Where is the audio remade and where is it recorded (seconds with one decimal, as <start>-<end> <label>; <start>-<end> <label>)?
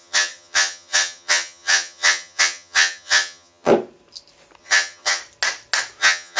0.0-3.7 remade; 3.7-4.6 recorded; 4.6-5.2 remade; 5.2-6.0 recorded; 6.0-6.4 remade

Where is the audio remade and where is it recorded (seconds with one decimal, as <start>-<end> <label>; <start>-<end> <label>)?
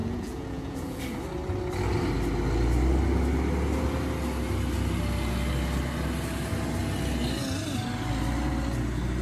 0.0-1.0 remade; 1.0-9.2 recorded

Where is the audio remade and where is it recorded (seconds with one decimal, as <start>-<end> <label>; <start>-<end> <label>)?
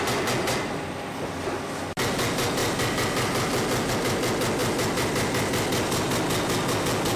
0.0-7.2 recorded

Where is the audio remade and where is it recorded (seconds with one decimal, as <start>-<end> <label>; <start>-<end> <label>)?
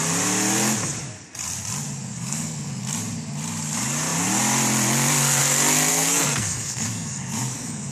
0.0-2.1 recorded; 2.1-2.8 remade; 2.8-5.9 recorded; 5.9-7.9 remade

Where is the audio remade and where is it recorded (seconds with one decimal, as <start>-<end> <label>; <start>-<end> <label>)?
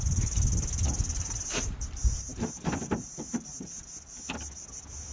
0.0-1.1 recorded; 1.1-4.2 remade; 4.2-5.1 recorded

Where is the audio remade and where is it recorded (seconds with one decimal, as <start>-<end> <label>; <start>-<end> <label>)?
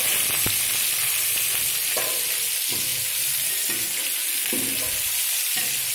0.0-5.9 recorded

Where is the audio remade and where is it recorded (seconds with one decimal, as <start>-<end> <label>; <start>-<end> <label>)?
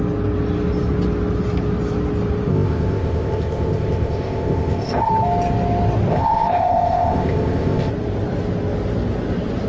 0.0-2.5 recorded; 2.5-5.1 remade; 5.1-6.1 recorded; 6.1-7.9 remade; 7.9-9.7 recorded